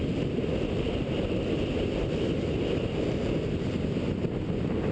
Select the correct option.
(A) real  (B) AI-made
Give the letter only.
A